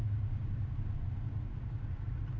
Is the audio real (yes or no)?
no